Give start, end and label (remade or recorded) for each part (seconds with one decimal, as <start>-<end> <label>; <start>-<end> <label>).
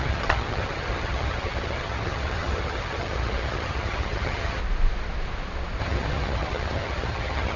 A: 0.0-4.6 remade; 4.6-5.8 recorded; 5.8-7.6 remade